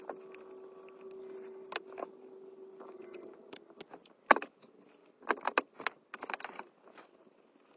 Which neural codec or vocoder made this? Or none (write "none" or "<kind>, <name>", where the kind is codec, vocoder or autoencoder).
none